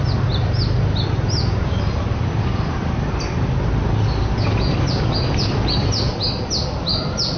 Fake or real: real